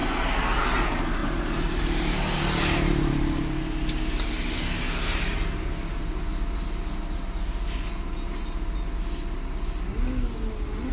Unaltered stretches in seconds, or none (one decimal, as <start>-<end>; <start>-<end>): 0.0-1.2; 3.4-10.9